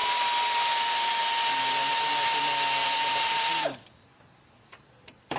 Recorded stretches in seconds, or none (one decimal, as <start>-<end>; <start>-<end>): 0.0-2.8; 4.7-5.4